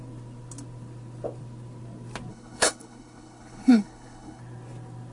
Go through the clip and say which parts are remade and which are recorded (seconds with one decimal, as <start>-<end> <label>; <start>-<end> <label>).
0.0-2.3 recorded; 2.3-4.4 remade; 4.4-5.1 recorded